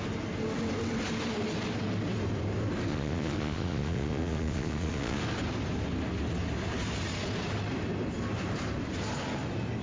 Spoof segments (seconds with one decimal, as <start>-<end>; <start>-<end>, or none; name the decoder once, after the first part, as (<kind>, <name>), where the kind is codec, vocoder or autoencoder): 2.9-5.2 (vocoder, Vocos)